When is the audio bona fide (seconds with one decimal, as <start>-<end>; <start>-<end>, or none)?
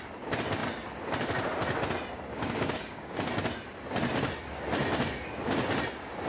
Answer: 0.0-2.3; 3.3-6.3